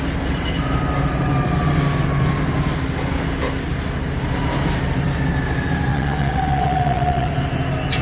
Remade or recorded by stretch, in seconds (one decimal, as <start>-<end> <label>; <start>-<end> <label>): 0.0-5.9 recorded; 5.9-7.3 remade; 7.3-8.0 recorded